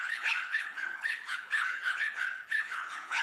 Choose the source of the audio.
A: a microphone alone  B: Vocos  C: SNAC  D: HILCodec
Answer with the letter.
D